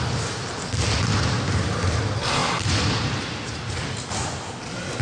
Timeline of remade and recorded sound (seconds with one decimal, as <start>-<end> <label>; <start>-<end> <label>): 0.0-5.0 recorded